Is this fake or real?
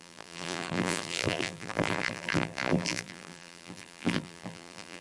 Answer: fake